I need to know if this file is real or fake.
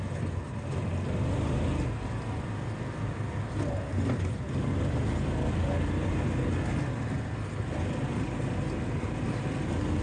real